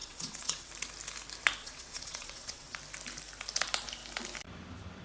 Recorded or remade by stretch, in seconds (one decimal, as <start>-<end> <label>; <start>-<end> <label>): 0.0-0.7 remade; 0.7-1.6 recorded; 1.6-2.8 remade; 2.8-5.0 recorded